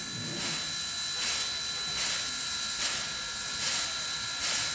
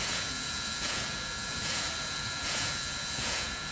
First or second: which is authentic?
first